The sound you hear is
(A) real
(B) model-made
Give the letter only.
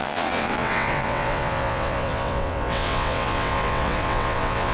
B